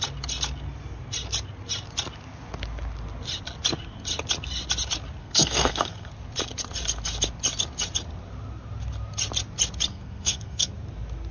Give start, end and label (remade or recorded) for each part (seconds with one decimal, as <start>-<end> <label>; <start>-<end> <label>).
0.0-5.2 recorded; 5.2-6.1 remade; 6.1-9.9 recorded; 9.9-10.7 remade; 10.7-11.3 recorded